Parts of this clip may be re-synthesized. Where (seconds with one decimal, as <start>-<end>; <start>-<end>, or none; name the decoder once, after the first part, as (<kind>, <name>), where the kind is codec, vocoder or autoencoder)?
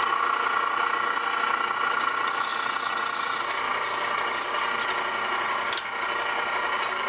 0.0-2.5 (vocoder, BigVGAN v2)